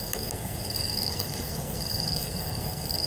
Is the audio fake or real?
fake